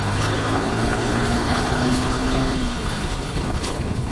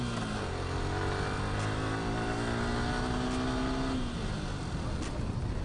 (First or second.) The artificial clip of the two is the first